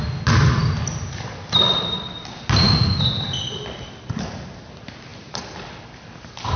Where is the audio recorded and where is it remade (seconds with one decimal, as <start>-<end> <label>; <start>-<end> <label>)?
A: 0.0-5.1 recorded; 5.1-6.6 remade